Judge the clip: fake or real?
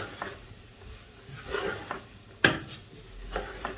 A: real